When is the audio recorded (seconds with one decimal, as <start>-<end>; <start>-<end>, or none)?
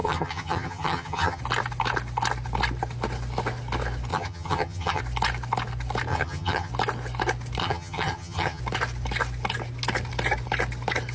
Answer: 1.4-4.1; 5.0-6.1; 6.7-7.6; 8.6-11.1